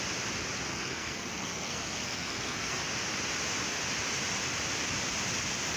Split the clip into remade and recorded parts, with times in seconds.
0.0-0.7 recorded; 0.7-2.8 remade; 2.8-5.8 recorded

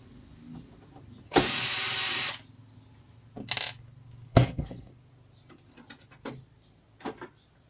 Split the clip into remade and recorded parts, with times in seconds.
0.0-4.3 recorded; 4.3-4.9 remade; 4.9-7.7 recorded